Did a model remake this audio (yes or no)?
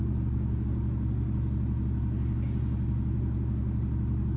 no